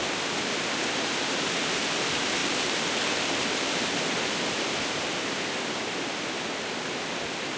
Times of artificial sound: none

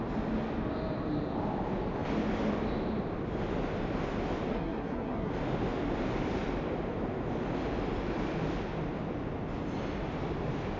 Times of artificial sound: 4.5-5.3